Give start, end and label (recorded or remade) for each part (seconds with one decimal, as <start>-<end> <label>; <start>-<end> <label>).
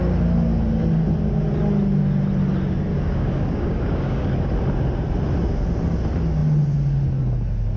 0.0-2.9 recorded; 2.9-4.3 remade; 4.3-7.8 recorded